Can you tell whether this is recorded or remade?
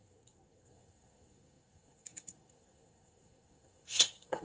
remade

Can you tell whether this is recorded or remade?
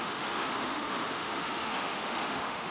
remade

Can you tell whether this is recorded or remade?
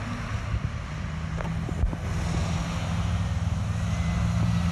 recorded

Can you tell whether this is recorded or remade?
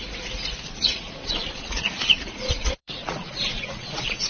remade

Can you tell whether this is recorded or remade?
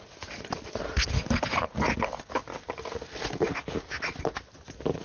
recorded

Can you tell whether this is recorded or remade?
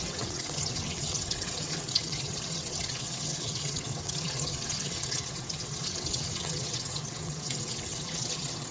remade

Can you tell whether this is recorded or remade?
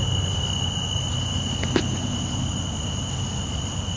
recorded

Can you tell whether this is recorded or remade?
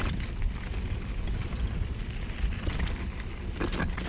recorded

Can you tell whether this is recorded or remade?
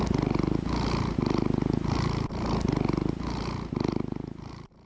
recorded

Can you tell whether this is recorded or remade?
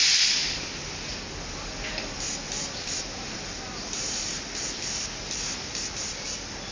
recorded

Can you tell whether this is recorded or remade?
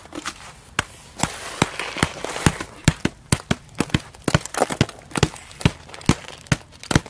recorded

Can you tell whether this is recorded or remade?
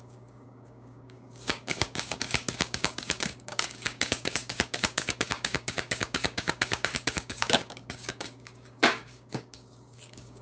remade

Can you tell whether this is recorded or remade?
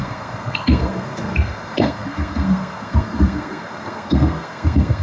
remade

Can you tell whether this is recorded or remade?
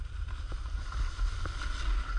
recorded